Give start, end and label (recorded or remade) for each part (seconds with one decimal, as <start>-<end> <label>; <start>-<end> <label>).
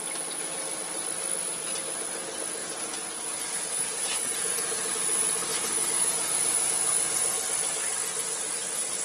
0.0-2.6 recorded; 2.6-4.9 remade; 4.9-5.5 recorded; 5.5-7.4 remade; 7.4-9.0 recorded